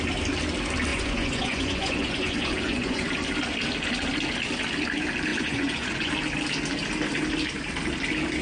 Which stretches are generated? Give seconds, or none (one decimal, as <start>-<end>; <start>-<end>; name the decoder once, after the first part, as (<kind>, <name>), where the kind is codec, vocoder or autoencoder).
0.9-3.1 (vocoder, Vocos); 5.3-6.1